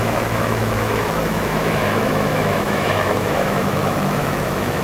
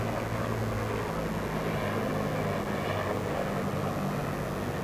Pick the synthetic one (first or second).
first